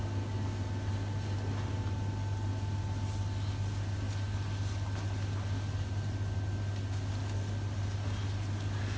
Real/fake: real